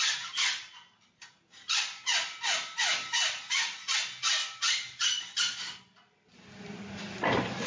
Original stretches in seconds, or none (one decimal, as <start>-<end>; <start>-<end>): 0.0-7.7